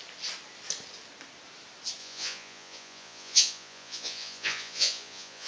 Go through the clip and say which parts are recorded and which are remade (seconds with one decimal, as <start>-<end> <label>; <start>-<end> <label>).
0.0-2.0 recorded; 2.0-5.5 remade